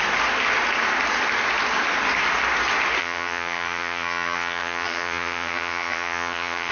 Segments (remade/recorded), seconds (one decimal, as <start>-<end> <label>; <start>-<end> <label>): 0.0-3.0 recorded; 3.0-6.7 remade